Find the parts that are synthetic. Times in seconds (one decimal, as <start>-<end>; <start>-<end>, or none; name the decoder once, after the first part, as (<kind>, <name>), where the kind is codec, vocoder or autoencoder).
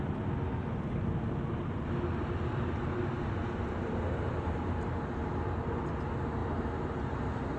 none